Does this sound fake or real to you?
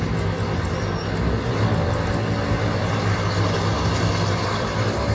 real